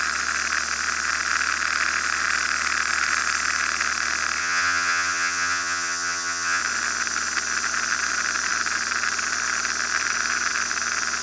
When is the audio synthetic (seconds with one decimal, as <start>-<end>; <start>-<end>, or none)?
4.4-6.6